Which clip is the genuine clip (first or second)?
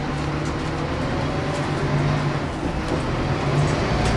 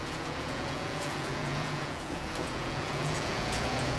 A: first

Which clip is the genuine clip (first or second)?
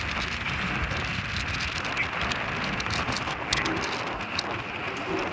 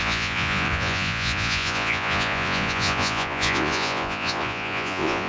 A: first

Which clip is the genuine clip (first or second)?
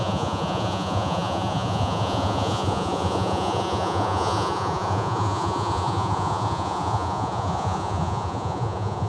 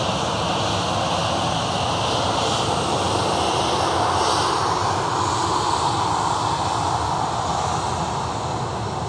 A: second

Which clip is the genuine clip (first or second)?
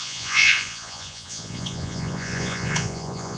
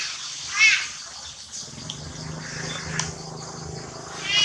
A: second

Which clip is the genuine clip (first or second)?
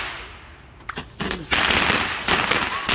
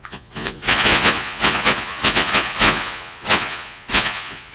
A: first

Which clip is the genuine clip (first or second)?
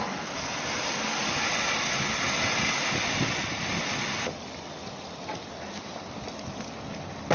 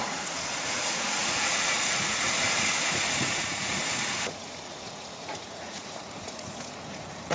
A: first